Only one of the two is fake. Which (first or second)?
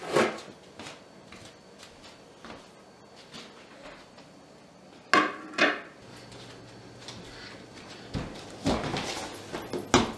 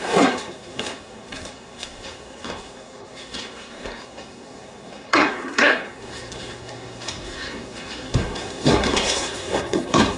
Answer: second